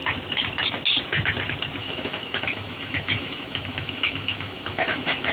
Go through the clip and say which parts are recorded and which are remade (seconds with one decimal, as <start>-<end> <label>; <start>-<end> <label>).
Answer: 0.0-1.8 recorded; 1.8-5.3 remade